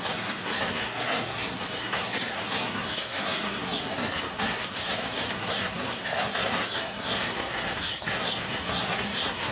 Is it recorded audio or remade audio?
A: remade